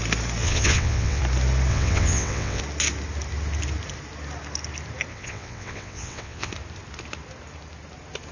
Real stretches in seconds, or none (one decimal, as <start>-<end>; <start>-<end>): 0.0-0.4; 1.2-1.7; 2.6-5.1; 6.5-8.3